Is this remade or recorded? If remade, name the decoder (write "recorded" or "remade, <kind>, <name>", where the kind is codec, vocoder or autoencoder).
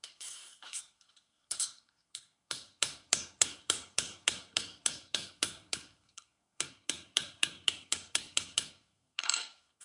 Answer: remade, codec, SNAC